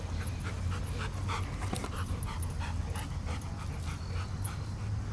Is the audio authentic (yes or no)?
yes